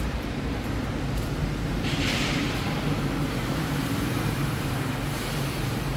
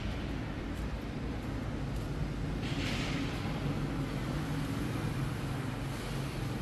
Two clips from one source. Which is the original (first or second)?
second